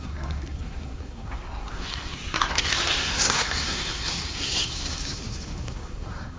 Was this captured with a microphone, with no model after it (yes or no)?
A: no